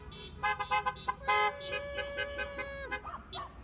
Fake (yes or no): no